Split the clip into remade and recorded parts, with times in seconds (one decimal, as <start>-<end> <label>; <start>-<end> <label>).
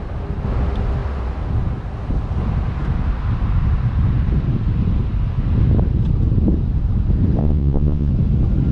0.0-7.4 recorded; 7.4-8.1 remade; 8.1-8.7 recorded